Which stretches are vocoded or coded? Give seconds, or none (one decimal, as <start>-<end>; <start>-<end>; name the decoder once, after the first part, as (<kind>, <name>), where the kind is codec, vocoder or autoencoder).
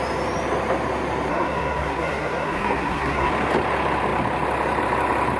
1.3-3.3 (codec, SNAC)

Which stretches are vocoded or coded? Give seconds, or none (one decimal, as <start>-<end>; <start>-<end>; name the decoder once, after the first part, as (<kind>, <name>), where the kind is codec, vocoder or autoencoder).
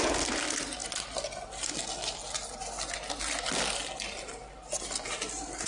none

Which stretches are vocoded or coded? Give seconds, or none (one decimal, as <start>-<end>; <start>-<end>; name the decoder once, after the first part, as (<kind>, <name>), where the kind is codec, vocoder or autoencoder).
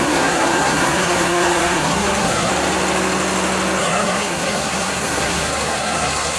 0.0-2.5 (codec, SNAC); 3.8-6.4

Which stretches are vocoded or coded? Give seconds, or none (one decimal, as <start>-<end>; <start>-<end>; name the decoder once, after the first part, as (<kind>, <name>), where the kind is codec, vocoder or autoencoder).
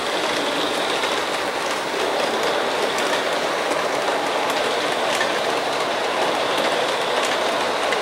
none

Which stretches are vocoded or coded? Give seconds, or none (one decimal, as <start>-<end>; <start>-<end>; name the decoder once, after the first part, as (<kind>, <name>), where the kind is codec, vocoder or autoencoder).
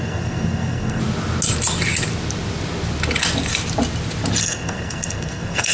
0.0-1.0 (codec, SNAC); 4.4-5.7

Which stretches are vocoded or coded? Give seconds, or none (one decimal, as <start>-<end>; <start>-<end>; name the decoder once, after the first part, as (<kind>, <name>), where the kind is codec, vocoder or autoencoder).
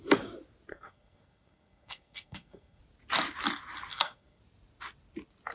0.7-2.8 (codec, SNAC); 3.9-4.4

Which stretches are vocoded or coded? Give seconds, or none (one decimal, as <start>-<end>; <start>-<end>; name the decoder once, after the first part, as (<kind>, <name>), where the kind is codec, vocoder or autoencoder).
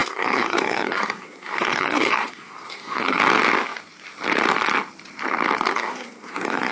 0.0-3.2 (codec, SNAC); 5.7-6.7